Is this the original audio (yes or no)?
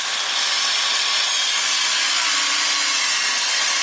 yes